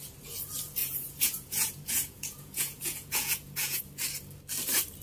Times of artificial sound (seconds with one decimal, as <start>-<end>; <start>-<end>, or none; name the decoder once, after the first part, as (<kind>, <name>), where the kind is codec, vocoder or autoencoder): 0.8-3.8 (vocoder, Vocos)

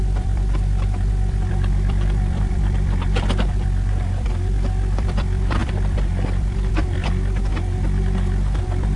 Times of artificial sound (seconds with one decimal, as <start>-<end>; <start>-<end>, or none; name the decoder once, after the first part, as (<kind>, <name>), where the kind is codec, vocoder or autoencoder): 0.0-7.5 (vocoder, BigVGAN v2); 8.6-9.0

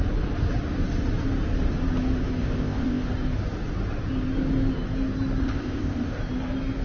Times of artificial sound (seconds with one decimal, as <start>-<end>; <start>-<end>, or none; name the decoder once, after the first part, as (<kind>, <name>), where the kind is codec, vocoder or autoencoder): 2.4-3.1 (codec, ZipCodec); 5.4-6.2